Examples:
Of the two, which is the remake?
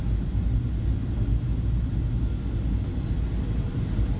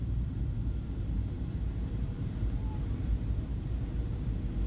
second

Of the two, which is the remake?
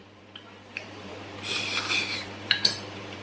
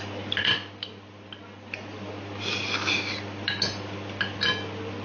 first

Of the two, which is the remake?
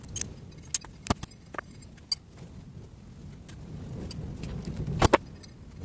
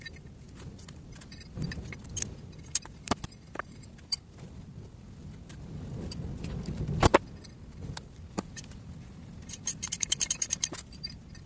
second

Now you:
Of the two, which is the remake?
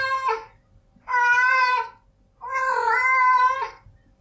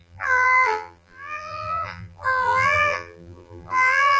second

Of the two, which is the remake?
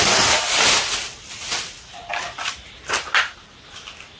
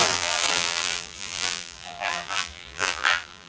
second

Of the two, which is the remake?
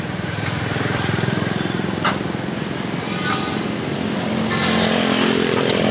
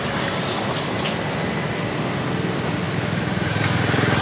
first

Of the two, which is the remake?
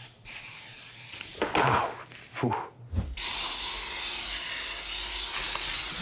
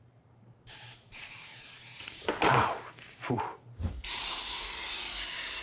second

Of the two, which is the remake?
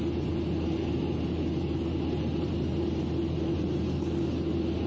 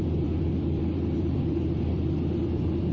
second